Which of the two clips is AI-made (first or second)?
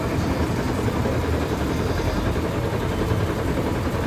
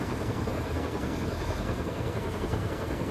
second